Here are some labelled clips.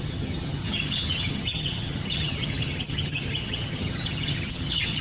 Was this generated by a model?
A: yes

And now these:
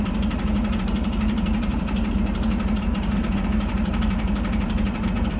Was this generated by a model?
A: yes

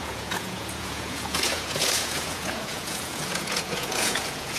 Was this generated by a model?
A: yes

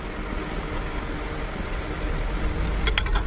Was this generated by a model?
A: no